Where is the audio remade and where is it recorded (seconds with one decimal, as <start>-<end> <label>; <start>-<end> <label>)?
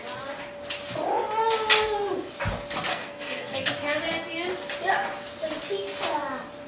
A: 0.0-2.9 recorded; 2.9-3.7 remade; 3.7-6.7 recorded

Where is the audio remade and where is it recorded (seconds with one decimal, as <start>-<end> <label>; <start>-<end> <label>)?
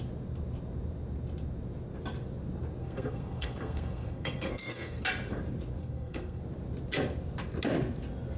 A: 0.0-2.8 recorded; 2.8-5.0 remade; 5.0-5.8 recorded; 5.8-6.4 remade; 6.4-8.4 recorded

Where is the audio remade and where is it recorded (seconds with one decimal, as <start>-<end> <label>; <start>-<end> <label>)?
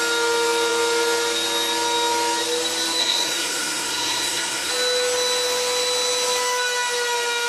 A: 0.0-3.0 recorded; 3.0-4.7 remade; 4.7-7.5 recorded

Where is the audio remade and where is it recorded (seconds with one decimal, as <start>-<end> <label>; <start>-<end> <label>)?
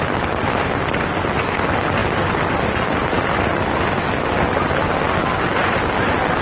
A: 0.0-6.4 recorded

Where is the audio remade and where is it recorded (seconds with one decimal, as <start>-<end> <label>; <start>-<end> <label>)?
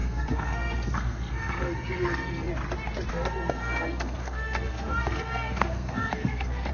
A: 0.0-2.5 remade; 2.5-3.1 recorded; 3.1-6.7 remade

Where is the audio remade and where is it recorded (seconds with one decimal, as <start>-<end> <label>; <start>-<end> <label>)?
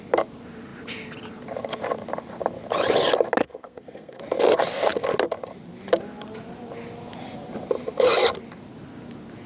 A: 0.0-3.4 recorded; 3.4-4.2 remade; 4.2-9.5 recorded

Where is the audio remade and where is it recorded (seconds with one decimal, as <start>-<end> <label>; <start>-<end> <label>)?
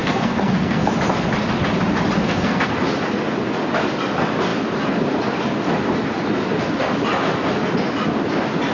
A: 0.0-0.9 remade; 0.9-2.2 recorded; 2.2-2.7 remade; 2.7-8.7 recorded